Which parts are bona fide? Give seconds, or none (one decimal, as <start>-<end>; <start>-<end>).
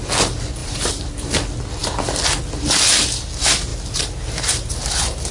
0.0-0.6; 1.3-3.7; 4.7-5.3